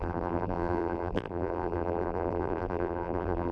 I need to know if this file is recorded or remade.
remade